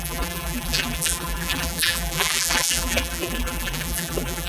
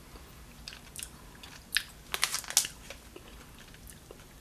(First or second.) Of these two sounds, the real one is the second